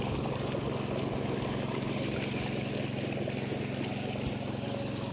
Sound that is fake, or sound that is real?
real